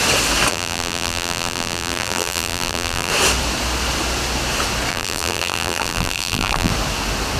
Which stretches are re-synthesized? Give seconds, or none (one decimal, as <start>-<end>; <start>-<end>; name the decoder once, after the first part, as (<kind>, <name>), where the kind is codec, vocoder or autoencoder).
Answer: 0.5-3.1 (vocoder, BigVGAN v2); 4.9-6.7